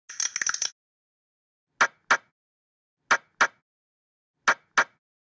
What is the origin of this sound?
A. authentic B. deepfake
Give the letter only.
A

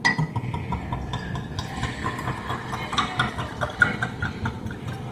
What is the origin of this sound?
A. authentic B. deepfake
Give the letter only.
A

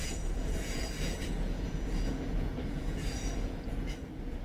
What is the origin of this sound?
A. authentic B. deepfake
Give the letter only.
B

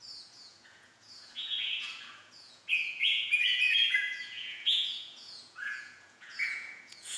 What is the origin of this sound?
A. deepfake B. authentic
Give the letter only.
A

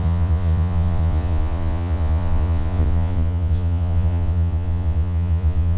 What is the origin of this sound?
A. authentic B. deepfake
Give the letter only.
B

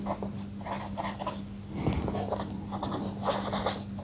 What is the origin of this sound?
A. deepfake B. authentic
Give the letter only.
B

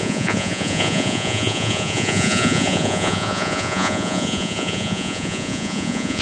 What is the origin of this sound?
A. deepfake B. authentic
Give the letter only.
A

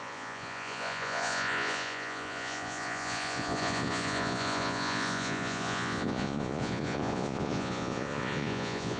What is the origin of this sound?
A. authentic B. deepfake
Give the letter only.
B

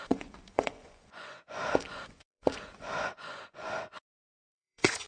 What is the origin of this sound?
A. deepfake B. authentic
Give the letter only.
A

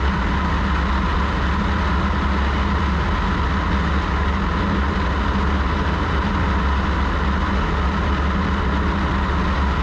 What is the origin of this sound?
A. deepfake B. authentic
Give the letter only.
B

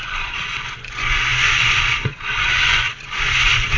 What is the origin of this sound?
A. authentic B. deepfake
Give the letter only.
B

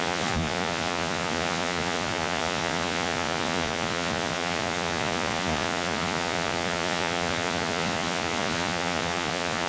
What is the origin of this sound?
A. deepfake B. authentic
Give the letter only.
A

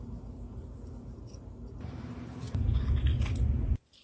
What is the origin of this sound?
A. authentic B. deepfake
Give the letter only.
A